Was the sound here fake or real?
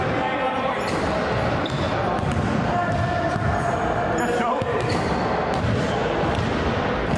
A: real